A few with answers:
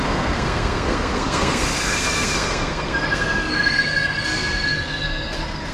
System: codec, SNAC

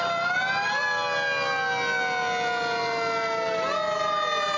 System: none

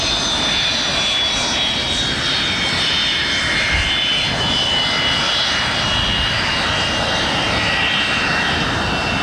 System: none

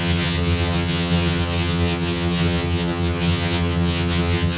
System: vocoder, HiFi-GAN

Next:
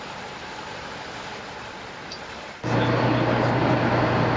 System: none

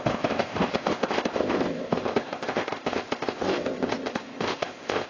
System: codec, ZipCodec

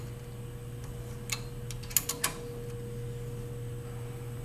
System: none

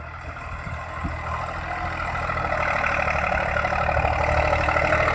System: none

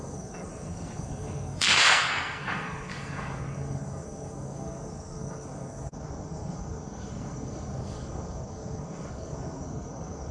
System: codec, SNAC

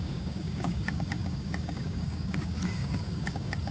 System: codec, DAC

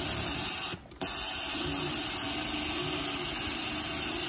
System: none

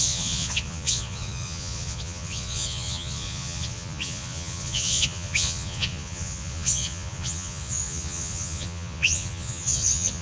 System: vocoder, Vocos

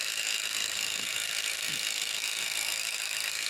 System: codec, SNAC